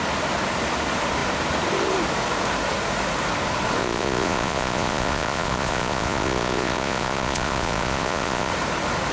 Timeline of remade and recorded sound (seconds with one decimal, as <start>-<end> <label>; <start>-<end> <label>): 0.0-3.8 recorded; 3.8-8.5 remade; 8.5-9.1 recorded